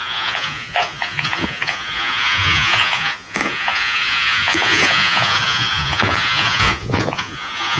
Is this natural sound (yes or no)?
no